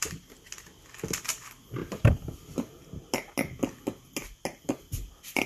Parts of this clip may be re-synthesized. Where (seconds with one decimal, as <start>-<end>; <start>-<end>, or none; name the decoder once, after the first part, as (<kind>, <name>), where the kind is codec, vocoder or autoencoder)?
none